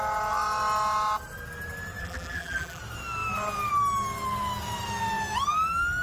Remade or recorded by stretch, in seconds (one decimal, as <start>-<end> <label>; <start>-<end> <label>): 0.0-2.0 recorded; 2.0-2.8 remade; 2.8-6.0 recorded